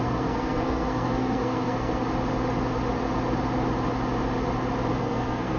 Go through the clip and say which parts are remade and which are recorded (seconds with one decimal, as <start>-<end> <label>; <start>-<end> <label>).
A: 0.0-2.0 remade; 2.0-5.0 recorded; 5.0-5.6 remade